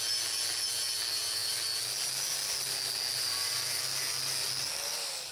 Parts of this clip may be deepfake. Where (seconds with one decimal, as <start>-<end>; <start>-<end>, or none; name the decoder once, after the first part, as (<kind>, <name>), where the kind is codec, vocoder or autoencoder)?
none